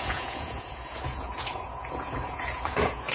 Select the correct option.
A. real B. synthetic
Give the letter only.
B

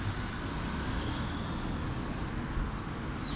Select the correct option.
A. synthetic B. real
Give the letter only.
B